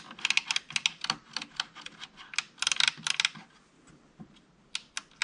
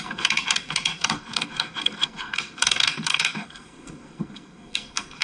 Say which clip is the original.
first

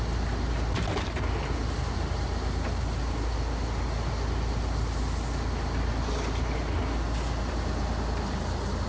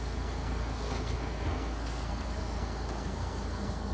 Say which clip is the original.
first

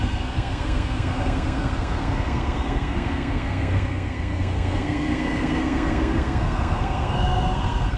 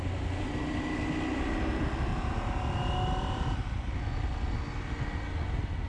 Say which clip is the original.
second